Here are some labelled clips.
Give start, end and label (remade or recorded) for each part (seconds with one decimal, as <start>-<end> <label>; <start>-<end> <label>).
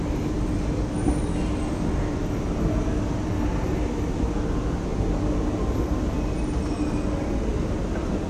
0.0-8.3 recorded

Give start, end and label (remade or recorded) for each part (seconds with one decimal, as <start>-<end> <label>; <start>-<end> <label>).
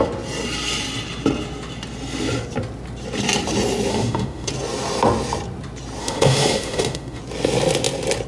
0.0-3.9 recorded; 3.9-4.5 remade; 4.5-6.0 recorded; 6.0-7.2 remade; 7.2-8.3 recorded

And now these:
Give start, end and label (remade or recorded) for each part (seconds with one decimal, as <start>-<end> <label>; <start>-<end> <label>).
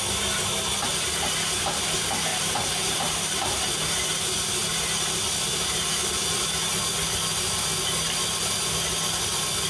0.0-2.3 recorded; 2.3-4.1 remade; 4.1-9.7 recorded